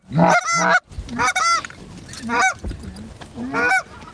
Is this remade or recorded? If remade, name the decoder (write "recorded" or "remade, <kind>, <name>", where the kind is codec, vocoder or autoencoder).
recorded